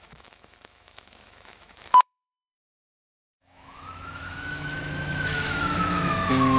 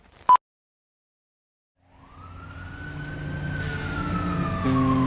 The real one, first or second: second